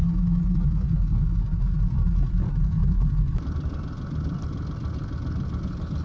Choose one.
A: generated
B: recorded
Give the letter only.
B